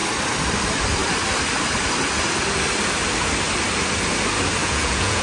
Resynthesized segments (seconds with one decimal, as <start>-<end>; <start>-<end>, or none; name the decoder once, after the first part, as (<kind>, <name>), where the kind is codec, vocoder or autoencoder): 4.6-5.2 (vocoder, Vocos)